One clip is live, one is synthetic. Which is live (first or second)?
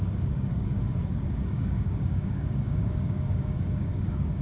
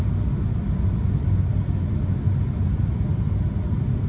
second